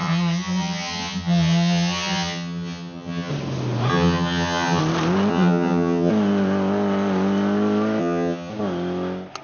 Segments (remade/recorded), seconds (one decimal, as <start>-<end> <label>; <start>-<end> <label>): 0.0-3.3 remade; 3.3-3.9 recorded; 3.9-4.8 remade; 4.8-5.3 recorded; 5.3-6.1 remade; 6.1-8.0 recorded; 8.0-8.5 remade; 8.5-9.4 recorded